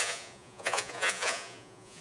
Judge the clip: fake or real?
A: fake